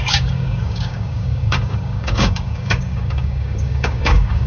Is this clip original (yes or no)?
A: no